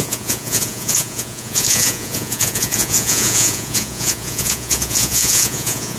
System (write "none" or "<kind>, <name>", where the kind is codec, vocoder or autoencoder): vocoder, Vocos